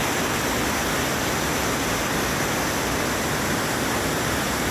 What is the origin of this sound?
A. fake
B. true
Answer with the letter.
B